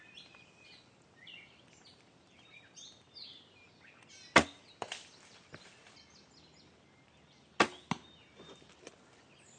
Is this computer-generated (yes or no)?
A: no